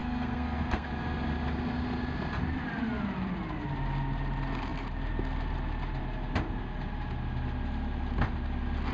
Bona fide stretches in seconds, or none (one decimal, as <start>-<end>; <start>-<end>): 0.9-8.9